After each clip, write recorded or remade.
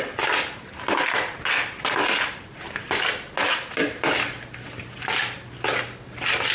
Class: recorded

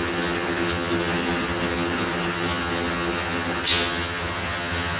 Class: remade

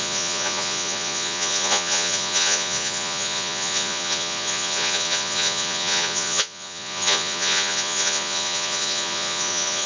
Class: remade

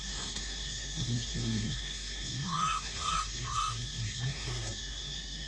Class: remade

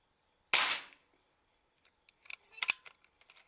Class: recorded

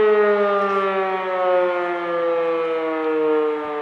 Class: recorded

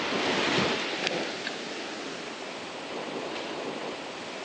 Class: recorded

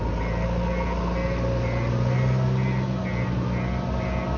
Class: recorded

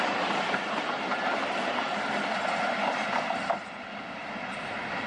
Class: recorded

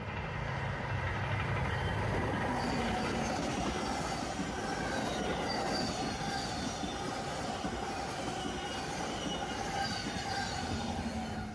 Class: recorded